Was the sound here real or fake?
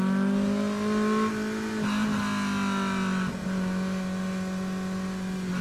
real